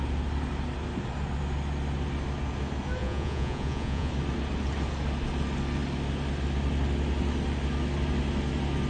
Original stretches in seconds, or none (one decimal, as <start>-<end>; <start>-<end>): 0.0-3.0; 4.1-8.9